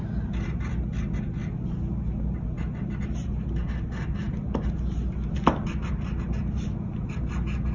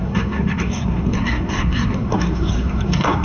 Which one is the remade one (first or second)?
second